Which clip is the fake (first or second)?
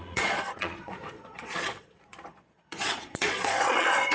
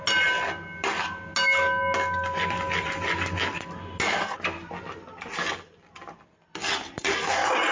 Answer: first